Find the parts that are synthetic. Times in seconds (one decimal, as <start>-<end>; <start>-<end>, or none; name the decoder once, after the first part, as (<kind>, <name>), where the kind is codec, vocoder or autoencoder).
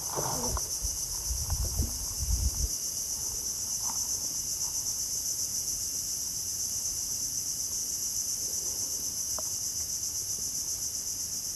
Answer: 2.2-3.4 (vocoder, BigVGAN v2); 5.5-7.2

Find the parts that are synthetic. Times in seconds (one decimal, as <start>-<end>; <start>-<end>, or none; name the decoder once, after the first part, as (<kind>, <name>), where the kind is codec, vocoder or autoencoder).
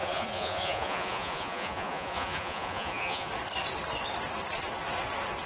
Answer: 0.0-3.3 (vocoder, Vocos)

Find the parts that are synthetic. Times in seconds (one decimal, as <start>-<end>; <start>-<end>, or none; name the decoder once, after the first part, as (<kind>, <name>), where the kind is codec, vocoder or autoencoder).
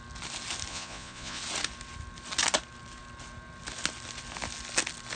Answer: 0.7-1.4 (vocoder, Vocos)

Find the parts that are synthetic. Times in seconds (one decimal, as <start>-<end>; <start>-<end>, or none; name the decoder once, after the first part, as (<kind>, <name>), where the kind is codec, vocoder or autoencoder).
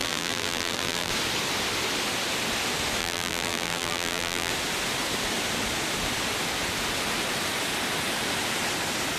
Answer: 0.0-1.1 (vocoder, BigVGAN v2); 3.0-4.5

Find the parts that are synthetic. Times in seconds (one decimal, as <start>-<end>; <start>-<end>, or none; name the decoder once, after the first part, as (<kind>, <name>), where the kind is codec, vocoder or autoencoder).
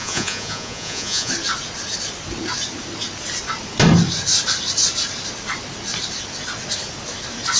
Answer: 0.0-1.3 (vocoder, Vocos)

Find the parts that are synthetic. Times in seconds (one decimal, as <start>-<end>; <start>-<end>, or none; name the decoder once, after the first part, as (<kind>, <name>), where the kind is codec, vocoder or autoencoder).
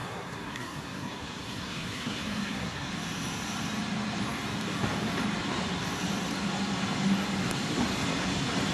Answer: 0.0-2.9 (codec, SNAC)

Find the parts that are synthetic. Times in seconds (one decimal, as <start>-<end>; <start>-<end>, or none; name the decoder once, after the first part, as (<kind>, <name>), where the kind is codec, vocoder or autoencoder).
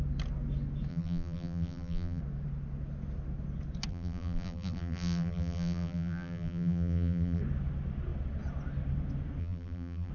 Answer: 0.9-2.2 (vocoder, BigVGAN v2); 3.9-7.4; 9.4-10.1